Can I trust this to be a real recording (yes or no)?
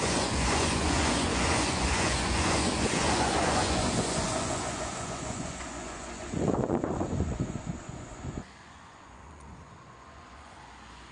no